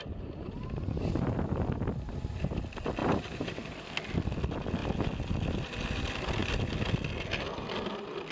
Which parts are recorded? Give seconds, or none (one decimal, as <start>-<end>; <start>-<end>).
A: 2.6-3.0; 3.9-8.3